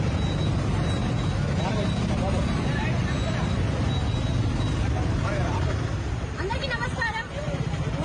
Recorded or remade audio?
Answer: recorded